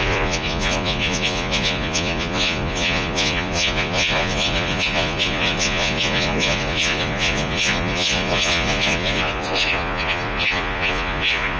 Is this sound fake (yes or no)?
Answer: yes